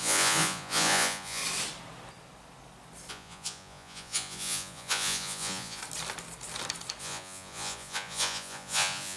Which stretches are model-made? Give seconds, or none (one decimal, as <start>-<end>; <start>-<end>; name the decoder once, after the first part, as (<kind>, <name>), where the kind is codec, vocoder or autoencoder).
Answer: 0.0-1.4 (vocoder, Vocos); 3.1-5.8; 7.0-9.2